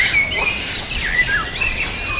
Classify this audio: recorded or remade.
recorded